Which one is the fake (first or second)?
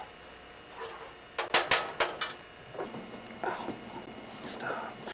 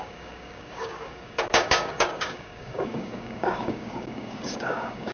second